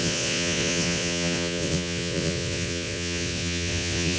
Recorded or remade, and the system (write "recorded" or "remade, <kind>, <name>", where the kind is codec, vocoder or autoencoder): remade, vocoder, Vocos